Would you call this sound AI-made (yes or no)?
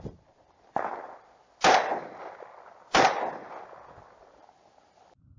no